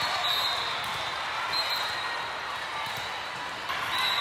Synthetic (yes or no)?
no